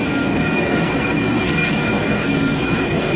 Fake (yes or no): yes